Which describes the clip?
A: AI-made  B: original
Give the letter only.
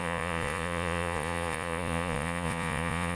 A